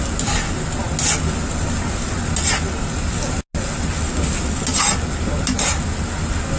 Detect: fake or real real